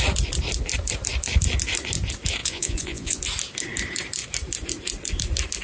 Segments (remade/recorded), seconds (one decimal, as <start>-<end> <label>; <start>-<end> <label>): 0.0-2.4 recorded; 2.4-3.2 remade; 3.2-5.6 recorded